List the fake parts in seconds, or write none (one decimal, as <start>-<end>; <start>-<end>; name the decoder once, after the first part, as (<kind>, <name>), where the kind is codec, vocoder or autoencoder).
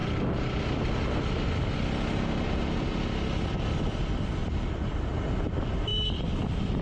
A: none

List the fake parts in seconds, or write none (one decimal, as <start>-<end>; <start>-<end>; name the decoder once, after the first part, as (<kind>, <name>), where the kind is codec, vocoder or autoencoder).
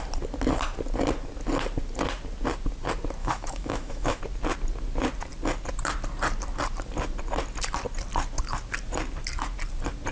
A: 3.2-4.2 (autoencoder, DAC-VAE)